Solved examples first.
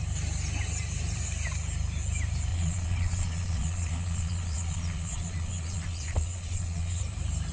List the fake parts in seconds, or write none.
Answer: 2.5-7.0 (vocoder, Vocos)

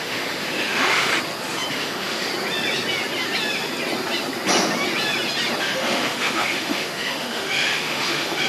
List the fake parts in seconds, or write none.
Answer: 0.0-1.1 (autoencoder, DAC-VAE); 1.7-2.3; 5.6-8.5

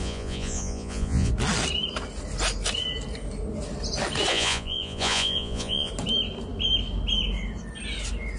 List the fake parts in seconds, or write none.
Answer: 0.0-1.3 (vocoder, Vocos); 4.3-5.9

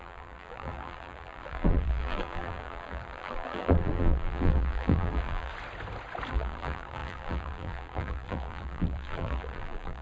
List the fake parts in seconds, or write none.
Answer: 0.0-5.5 (vocoder, BigVGAN v2); 6.3-10.0